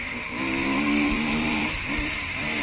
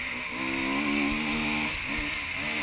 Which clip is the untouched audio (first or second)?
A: second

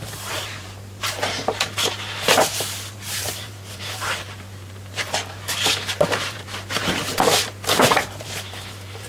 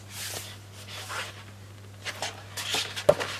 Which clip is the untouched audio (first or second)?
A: second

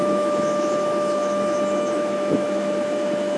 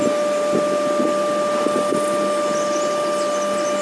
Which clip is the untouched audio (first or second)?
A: second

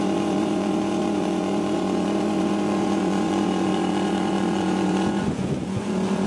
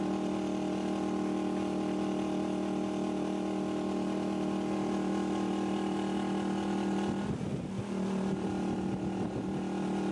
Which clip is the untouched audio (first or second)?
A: second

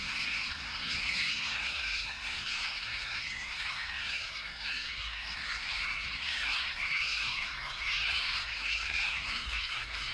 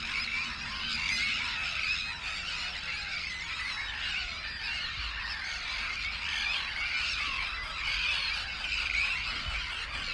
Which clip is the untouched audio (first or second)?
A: second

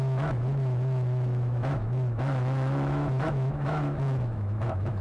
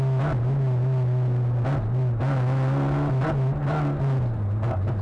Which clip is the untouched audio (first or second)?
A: second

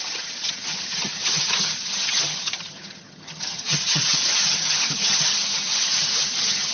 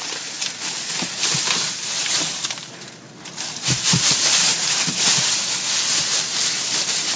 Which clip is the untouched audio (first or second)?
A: second